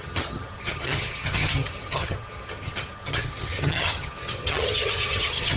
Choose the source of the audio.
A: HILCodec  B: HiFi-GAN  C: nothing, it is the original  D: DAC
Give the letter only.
B